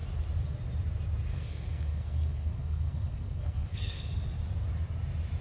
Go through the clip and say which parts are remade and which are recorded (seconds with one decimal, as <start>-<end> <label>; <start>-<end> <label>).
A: 0.0-1.3 recorded; 1.3-4.2 remade; 4.2-5.4 recorded